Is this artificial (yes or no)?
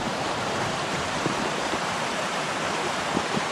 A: yes